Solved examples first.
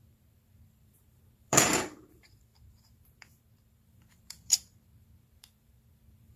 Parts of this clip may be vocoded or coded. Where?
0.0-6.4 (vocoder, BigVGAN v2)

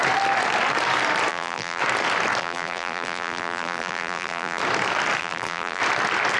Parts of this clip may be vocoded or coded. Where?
1.3-1.8 (vocoder, BigVGAN v2); 2.4-4.6; 5.2-5.8